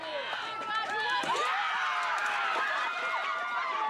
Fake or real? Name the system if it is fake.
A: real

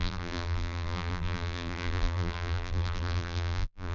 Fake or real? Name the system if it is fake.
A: fake, vocoder, BigVGAN v2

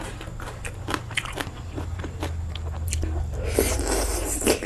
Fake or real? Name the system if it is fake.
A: real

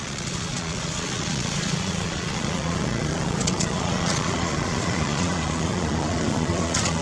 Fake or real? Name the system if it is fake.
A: fake, vocoder, Vocos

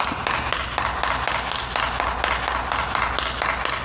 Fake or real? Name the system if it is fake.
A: real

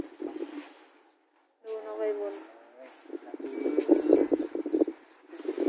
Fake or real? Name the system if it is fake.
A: real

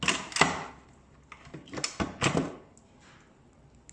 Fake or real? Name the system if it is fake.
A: real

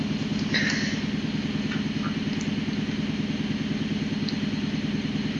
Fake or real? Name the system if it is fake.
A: real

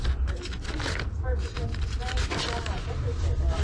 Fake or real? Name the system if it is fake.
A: real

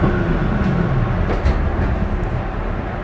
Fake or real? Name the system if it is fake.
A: real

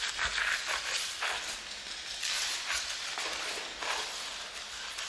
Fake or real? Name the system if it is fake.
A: real